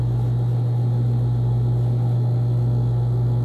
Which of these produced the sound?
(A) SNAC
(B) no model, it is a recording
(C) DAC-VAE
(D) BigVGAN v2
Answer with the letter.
B